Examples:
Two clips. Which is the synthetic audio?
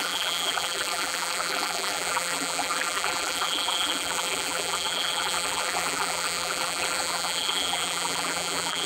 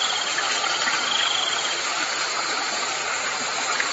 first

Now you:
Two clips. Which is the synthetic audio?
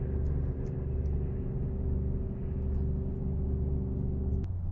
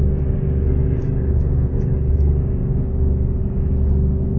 second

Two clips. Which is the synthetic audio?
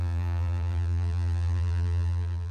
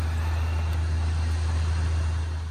first